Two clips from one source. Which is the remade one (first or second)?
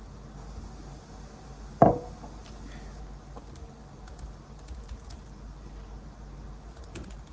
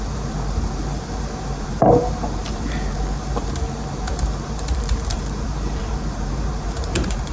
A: second